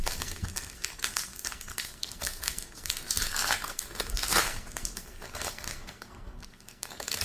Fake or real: fake